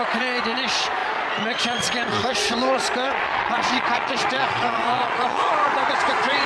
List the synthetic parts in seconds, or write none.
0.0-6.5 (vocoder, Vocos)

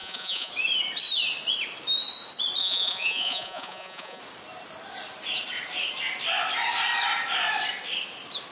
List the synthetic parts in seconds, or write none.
0.0-0.5 (vocoder, Vocos); 2.6-4.2

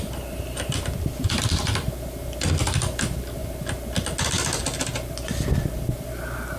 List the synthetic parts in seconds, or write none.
none

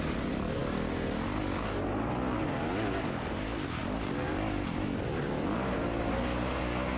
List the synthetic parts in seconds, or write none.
none

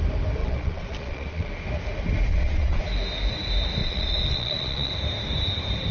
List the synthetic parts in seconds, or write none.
0.4-1.5 (vocoder, Vocos); 2.3-2.8; 3.8-4.9

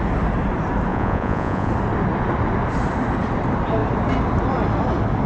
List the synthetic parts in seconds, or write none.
0.9-1.7 (vocoder, Vocos)

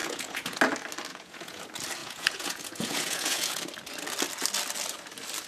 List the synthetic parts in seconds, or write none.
0.0-0.6 (vocoder, Vocos); 1.1-1.6; 2.0-3.6